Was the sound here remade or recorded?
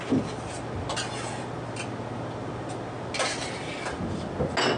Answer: recorded